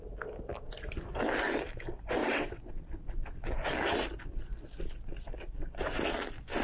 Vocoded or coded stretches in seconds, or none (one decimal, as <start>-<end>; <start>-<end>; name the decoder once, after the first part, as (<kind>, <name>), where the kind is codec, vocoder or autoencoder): 2.2-2.7 (vocoder, WaveNeXt)